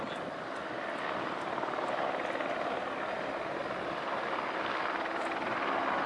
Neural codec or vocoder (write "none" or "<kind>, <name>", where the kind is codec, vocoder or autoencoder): none